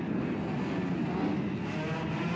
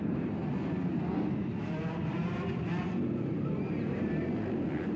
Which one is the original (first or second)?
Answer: first